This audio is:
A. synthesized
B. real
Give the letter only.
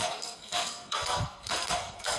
A